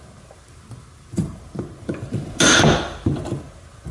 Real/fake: real